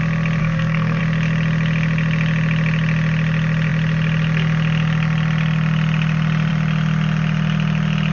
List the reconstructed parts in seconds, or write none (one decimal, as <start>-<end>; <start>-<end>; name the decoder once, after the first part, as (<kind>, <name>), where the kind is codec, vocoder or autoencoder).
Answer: 0.4-1.0 (codec, SNAC)